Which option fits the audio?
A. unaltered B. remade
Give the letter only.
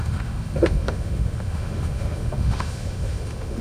B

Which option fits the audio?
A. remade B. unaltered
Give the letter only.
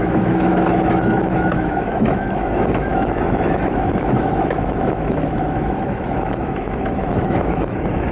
A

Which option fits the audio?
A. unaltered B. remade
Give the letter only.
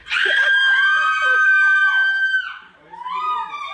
B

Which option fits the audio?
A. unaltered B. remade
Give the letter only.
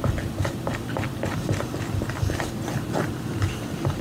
B